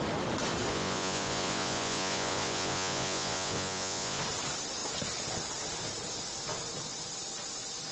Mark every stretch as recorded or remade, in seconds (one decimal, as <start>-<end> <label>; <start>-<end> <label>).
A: 0.0-0.7 recorded; 0.7-4.2 remade; 4.2-7.9 recorded